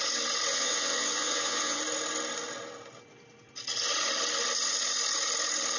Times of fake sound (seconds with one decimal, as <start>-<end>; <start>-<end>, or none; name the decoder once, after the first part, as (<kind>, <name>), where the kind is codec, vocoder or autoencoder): 0.5-1.8 (vocoder, WaveNeXt)